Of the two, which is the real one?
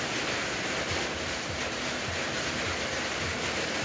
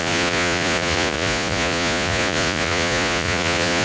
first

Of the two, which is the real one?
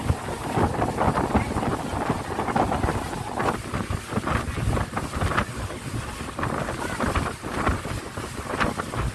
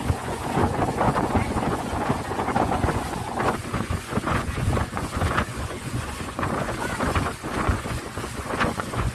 first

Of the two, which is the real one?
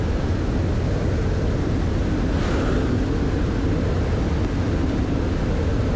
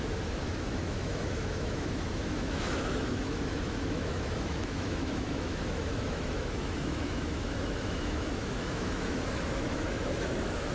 first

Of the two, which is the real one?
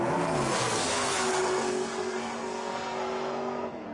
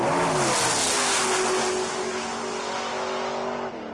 second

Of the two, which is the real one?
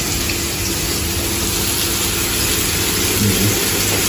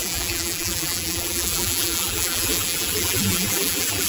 first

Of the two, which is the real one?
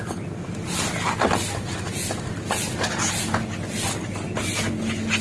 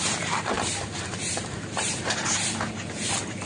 first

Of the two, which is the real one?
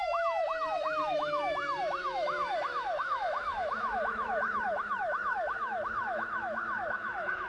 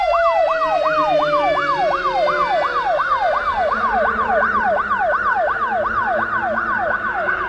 second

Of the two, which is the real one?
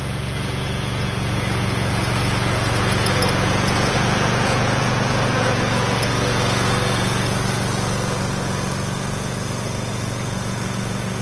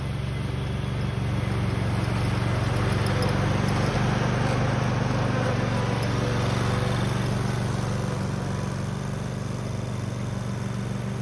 second